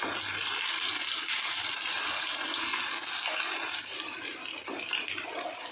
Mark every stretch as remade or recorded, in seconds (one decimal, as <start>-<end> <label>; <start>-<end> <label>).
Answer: 0.0-5.7 recorded